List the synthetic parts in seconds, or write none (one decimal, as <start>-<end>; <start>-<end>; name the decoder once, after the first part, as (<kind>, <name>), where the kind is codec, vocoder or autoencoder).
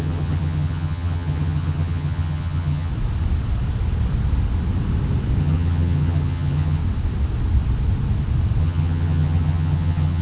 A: 0.0-2.9 (vocoder, HiFi-GAN); 5.4-6.8; 8.6-10.2